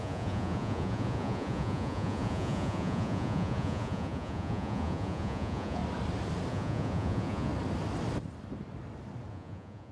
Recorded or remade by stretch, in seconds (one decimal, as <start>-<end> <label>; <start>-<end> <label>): 0.0-5.8 remade; 5.8-6.5 recorded; 6.5-7.5 remade; 7.5-9.3 recorded; 9.3-9.9 remade